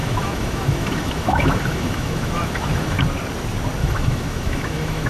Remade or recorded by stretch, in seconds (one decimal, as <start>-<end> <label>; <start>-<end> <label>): 0.0-3.0 remade; 3.0-3.8 recorded; 3.8-5.1 remade